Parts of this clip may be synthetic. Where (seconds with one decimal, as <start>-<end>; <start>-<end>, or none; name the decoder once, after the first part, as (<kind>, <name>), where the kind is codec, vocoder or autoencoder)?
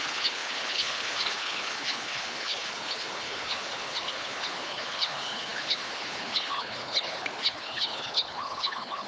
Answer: 0.0-9.1 (codec, HILCodec)